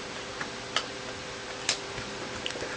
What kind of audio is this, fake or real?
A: real